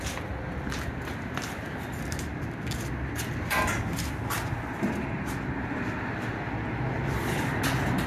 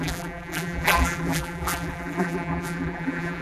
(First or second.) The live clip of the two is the first